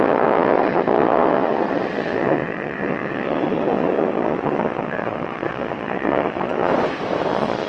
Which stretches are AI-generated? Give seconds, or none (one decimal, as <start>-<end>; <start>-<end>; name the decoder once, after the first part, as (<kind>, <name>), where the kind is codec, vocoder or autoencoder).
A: 0.0-6.7 (vocoder, Vocos); 7.3-7.7